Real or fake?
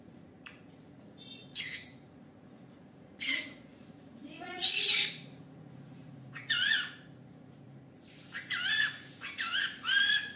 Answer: fake